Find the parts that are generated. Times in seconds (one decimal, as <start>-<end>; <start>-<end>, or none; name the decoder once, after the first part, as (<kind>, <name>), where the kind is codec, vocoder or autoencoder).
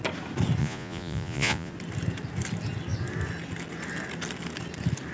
0.6-1.7 (vocoder, Vocos)